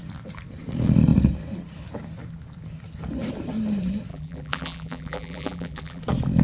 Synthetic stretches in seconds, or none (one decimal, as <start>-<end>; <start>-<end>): 4.1-6.0